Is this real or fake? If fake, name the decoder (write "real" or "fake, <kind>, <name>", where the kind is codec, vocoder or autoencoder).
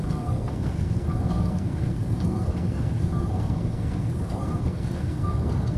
fake, codec, SNAC